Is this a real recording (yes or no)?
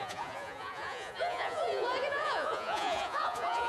no